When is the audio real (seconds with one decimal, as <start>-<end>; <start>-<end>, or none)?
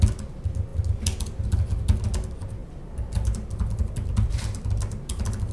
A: 0.0-2.6; 4.4-5.5